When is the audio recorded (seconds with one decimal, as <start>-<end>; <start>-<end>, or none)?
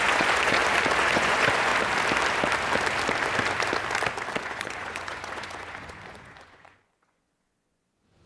0.6-1.1; 1.7-4.4